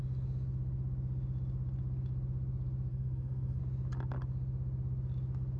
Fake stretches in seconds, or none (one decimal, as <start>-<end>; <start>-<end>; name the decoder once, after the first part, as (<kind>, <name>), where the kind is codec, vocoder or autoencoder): 2.9-3.6 (codec, SNAC)